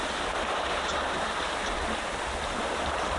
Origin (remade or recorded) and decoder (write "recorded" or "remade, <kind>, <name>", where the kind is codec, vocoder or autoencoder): recorded